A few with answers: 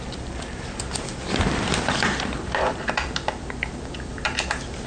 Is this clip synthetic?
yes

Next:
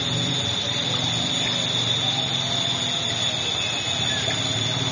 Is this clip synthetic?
no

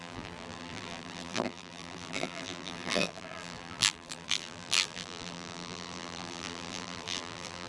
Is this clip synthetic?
yes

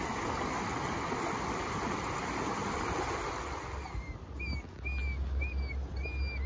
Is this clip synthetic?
no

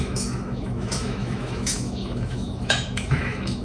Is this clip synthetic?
yes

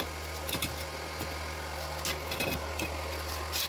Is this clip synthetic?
no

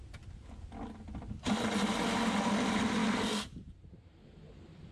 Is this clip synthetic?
no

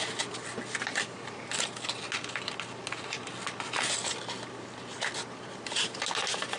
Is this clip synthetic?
no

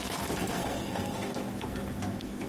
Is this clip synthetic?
yes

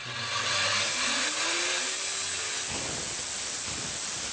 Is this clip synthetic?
no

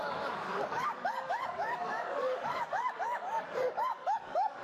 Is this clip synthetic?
yes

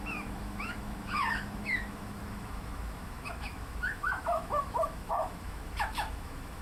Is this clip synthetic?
yes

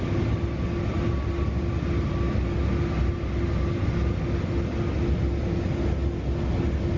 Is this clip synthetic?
no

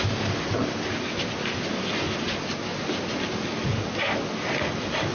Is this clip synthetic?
no